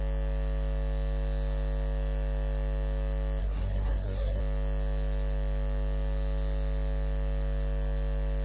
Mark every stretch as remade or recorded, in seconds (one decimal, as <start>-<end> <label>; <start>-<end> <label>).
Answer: 0.0-3.4 recorded; 3.4-4.4 remade; 4.4-8.4 recorded